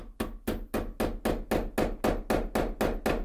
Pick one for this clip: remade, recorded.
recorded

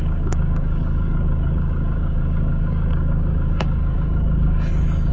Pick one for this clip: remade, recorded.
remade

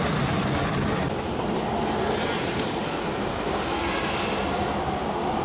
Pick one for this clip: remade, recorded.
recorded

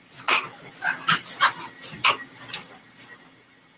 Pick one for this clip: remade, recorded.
recorded